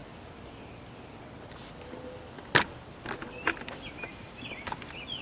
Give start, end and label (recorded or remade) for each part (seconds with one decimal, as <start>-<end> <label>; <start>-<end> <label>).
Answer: 0.0-4.1 recorded; 4.1-4.7 remade; 4.7-5.2 recorded